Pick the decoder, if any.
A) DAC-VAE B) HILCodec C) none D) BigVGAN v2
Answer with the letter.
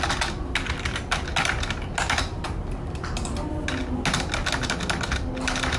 C